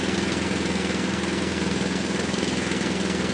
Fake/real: fake